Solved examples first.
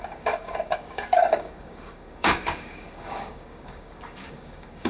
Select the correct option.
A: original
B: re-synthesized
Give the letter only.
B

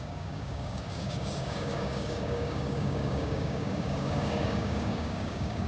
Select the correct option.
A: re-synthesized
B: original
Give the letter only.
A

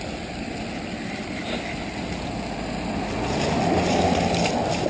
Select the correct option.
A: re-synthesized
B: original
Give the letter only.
B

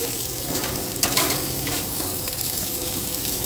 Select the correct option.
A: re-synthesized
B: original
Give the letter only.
A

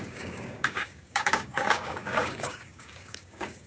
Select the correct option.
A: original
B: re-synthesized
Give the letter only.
B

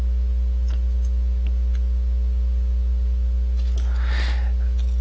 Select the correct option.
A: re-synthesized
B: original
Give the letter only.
B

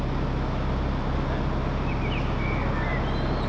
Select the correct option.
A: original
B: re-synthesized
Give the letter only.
A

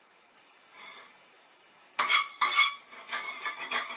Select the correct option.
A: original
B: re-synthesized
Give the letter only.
B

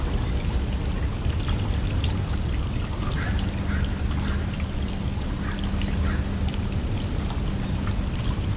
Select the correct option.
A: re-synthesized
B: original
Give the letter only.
B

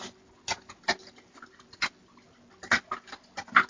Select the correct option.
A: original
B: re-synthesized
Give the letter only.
A